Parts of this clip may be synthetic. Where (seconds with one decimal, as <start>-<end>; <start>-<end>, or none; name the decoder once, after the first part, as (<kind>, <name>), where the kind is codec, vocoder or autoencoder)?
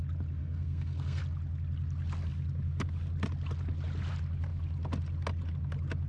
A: 0.4-1.2 (codec, SNAC)